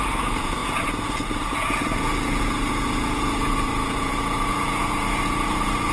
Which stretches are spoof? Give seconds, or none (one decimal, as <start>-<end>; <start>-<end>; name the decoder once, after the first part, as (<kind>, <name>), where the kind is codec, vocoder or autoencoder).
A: 0.0-5.9 (vocoder, Vocos)